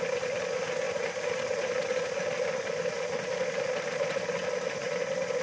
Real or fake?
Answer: real